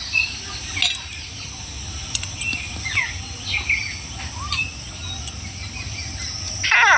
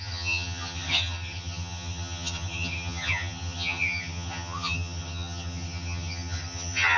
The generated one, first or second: second